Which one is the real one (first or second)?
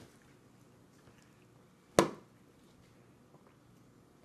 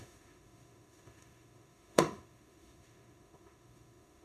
first